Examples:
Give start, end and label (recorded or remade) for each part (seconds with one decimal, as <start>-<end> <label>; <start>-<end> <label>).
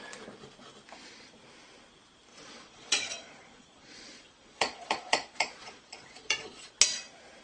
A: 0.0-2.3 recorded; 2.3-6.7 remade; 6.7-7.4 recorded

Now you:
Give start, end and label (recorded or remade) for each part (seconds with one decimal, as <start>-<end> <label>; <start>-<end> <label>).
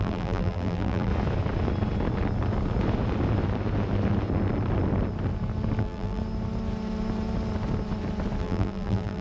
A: 0.0-1.1 remade; 1.1-5.8 recorded; 5.8-6.2 remade; 6.2-8.4 recorded; 8.4-9.2 remade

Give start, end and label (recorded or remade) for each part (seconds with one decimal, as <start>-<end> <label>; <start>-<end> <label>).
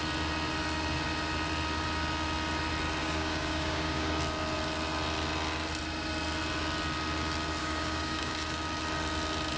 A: 0.0-3.0 recorded; 3.0-4.1 remade; 4.1-7.6 recorded; 7.6-8.3 remade; 8.3-9.6 recorded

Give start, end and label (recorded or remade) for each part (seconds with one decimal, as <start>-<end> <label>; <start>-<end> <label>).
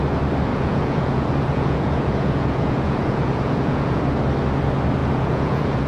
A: 0.0-0.5 recorded; 0.5-4.0 remade; 4.0-5.0 recorded; 5.0-5.9 remade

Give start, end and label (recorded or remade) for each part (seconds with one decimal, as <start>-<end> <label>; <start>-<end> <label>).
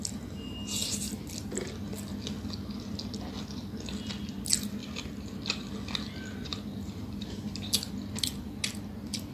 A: 0.0-4.8 recorded; 4.8-5.7 remade; 5.7-6.5 recorded; 6.5-7.9 remade; 7.9-9.3 recorded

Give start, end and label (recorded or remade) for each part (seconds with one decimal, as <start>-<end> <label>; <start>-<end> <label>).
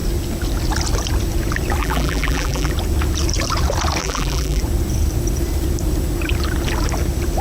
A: 0.0-1.8 recorded; 1.8-2.7 remade; 2.7-4.0 recorded; 4.0-4.6 remade; 4.6-7.4 recorded